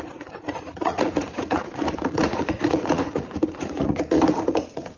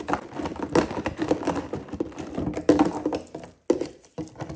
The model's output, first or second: first